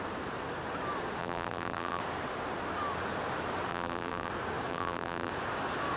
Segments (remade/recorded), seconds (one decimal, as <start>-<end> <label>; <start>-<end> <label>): 0.0-1.2 recorded; 1.2-2.0 remade; 2.0-3.7 recorded; 3.7-4.3 remade; 4.3-4.7 recorded; 4.7-5.3 remade; 5.3-6.0 recorded